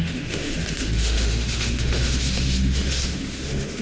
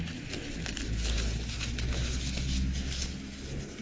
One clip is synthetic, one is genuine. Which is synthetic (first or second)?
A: first